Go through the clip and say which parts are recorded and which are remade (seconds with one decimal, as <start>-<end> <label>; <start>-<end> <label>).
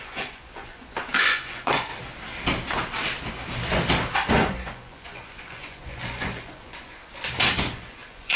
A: 0.0-1.9 remade; 1.9-4.3 recorded; 4.3-7.0 remade; 7.0-7.6 recorded; 7.6-8.4 remade